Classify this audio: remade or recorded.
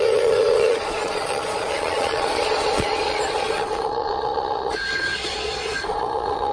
remade